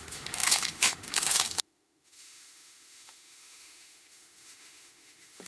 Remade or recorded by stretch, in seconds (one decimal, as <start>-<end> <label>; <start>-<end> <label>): 0.0-5.5 remade